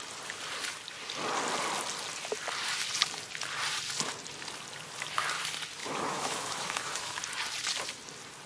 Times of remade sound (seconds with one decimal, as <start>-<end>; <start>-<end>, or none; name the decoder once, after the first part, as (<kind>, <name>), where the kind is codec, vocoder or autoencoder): 5.8-7.2 (autoencoder, DAC-VAE)